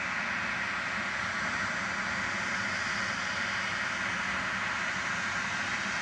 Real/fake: real